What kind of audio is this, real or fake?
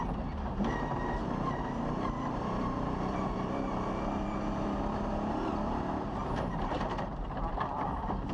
fake